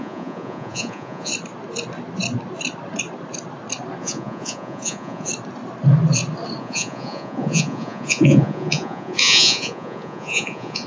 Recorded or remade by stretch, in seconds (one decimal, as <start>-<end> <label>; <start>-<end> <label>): 0.0-1.3 remade; 1.3-4.0 recorded; 4.0-5.3 remade; 5.3-6.6 recorded; 6.6-10.9 remade